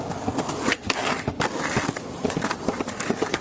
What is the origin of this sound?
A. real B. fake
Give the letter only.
A